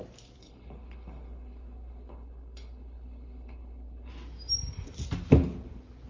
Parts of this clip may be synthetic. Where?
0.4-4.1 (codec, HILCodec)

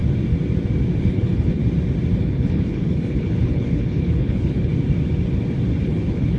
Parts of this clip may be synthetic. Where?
1.0-1.6 (codec, HILCodec); 2.2-4.7; 5.8-6.4

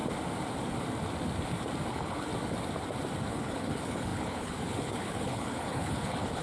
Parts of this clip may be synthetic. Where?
1.9-2.3 (codec, HILCodec); 3.3-6.4

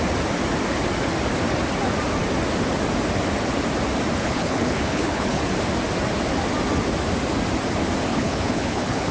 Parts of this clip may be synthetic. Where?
4.2-5.4 (codec, HILCodec); 8.1-9.1

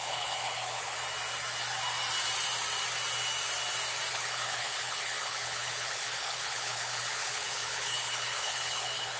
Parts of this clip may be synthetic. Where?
0.0-1.0 (codec, HILCodec); 4.1-9.2